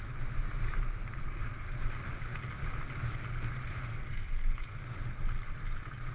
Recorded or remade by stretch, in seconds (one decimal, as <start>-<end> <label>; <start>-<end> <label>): 0.0-6.1 recorded